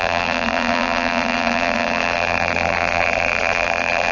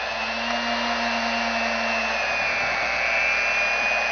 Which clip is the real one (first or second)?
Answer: second